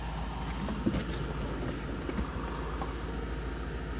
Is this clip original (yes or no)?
yes